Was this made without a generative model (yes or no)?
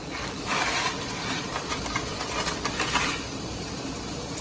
yes